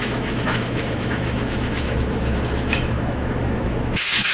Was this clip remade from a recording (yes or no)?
yes